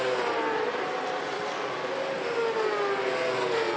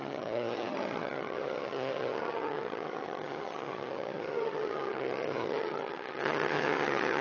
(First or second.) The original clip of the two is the first